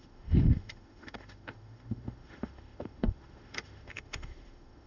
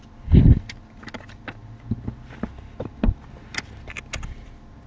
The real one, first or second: second